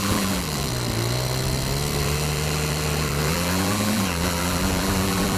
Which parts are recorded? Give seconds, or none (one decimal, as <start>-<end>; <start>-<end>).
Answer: 0.7-2.0